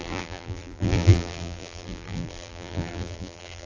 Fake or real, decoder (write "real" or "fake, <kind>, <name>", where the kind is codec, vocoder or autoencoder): fake, vocoder, BigVGAN v2